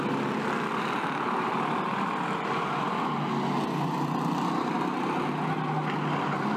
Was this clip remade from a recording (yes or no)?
no